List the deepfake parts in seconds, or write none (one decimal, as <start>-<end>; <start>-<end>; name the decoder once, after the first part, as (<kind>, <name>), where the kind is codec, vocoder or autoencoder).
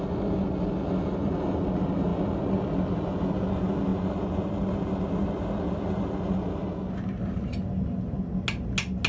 none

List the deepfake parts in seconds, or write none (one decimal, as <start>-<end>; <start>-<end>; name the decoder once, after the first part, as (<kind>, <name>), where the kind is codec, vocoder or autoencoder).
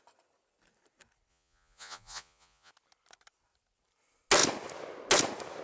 1.3-2.7 (vocoder, Vocos)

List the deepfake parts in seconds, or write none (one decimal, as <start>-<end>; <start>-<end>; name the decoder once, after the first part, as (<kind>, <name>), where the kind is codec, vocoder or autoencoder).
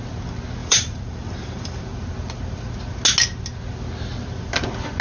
0.6-1.8 (vocoder, BigVGAN v2)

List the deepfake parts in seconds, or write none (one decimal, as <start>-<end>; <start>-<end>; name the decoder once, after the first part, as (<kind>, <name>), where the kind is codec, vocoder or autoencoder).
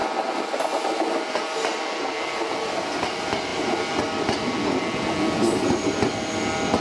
none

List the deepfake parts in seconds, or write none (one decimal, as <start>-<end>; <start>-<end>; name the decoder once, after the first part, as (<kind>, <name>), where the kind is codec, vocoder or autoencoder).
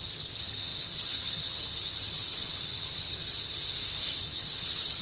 0.0-3.6 (vocoder, HiFi-GAN); 4.2-5.0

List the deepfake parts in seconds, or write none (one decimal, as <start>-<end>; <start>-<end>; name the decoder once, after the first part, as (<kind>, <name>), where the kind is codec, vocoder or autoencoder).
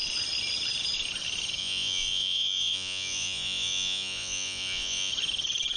1.6-5.1 (vocoder, Vocos)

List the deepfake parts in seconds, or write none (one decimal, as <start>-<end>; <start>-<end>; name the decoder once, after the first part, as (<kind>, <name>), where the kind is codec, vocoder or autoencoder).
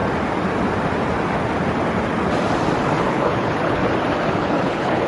3.1-3.8 (codec, HILCodec); 4.3-5.1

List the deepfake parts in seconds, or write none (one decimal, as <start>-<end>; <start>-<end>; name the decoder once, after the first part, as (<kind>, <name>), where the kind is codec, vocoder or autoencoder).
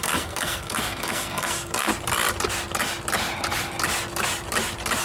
0.0-1.9 (codec, SNAC)